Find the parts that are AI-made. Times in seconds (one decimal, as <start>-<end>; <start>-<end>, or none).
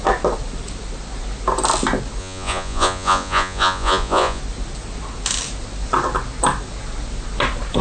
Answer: 2.2-4.4